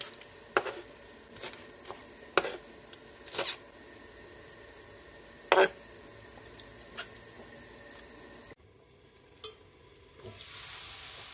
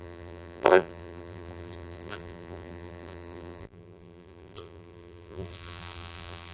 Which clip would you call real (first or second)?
first